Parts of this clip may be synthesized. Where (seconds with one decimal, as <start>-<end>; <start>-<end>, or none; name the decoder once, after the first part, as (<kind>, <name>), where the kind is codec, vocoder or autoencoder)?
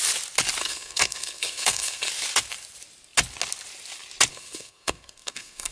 0.6-2.1 (codec, SNAC); 4.3-5.7